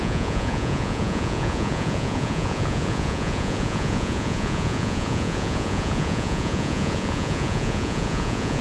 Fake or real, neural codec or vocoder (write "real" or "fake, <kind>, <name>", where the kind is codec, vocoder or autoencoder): fake, vocoder, Vocos